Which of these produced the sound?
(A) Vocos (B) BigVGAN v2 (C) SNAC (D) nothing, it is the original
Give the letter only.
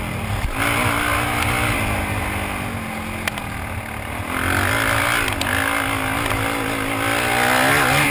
D